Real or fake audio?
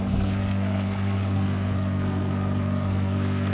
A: fake